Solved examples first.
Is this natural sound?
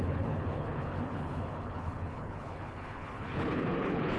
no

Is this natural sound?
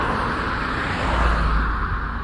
yes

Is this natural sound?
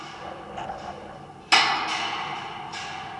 yes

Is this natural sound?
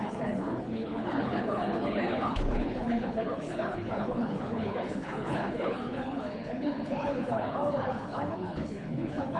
no